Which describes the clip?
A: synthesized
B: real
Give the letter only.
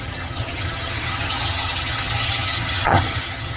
A